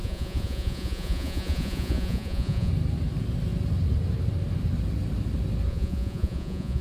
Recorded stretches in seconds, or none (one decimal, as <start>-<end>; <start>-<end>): 2.7-5.7